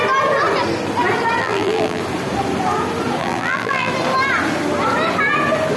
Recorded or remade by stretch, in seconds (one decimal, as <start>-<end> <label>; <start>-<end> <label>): 0.0-1.4 recorded; 1.4-2.0 remade; 2.0-3.2 recorded; 3.2-3.9 remade; 3.9-5.8 recorded